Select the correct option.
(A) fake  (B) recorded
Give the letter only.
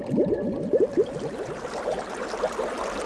B